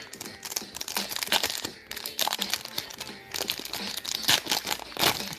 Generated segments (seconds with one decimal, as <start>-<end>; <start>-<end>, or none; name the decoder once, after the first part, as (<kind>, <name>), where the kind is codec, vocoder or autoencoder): 1.7-2.5 (vocoder, BigVGAN v2)